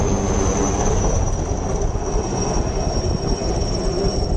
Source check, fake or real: real